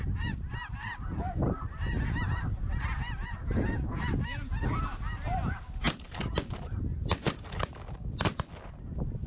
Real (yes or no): yes